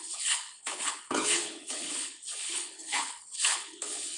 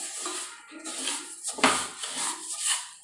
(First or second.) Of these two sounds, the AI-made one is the first